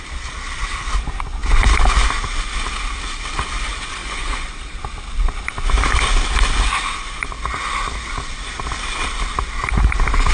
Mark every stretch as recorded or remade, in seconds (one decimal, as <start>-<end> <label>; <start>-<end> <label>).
0.0-4.0 recorded; 4.0-4.5 remade; 4.5-10.3 recorded